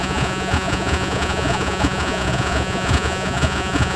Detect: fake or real fake